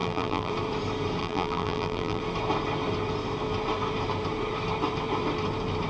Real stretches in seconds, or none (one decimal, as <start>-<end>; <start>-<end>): 0.5-1.2; 2.2-5.9